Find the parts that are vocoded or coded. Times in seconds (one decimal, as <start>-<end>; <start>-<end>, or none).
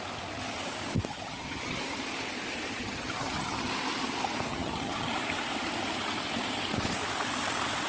1.1-1.8; 2.8-3.7; 4.5-5.1